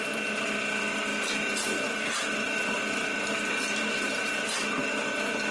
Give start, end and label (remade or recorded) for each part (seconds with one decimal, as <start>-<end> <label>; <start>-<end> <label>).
0.0-5.5 recorded